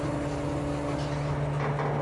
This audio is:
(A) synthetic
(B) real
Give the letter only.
B